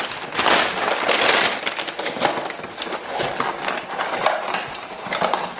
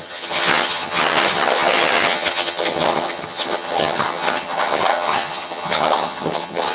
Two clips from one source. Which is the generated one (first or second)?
second